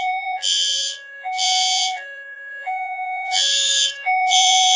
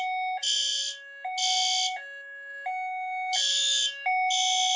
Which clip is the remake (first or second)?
first